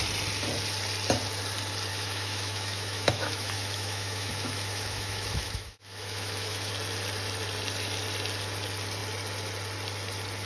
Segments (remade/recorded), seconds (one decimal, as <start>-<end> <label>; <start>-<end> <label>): 0.0-1.9 recorded; 1.9-6.7 remade; 6.7-10.5 recorded